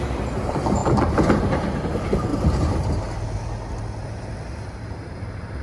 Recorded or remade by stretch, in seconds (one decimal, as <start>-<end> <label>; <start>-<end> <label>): 0.0-0.8 remade; 0.8-1.4 recorded; 1.4-2.3 remade; 2.3-3.8 recorded; 3.8-5.6 remade